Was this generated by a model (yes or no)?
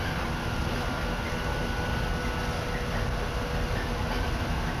no